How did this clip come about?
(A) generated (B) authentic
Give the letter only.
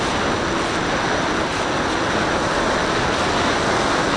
B